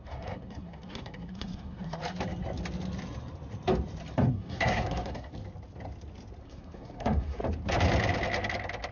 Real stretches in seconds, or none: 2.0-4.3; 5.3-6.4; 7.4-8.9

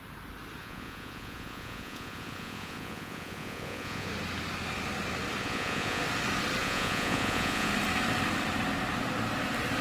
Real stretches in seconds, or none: 0.0-0.6; 4.1-5.4; 6.0-6.6; 7.7-9.8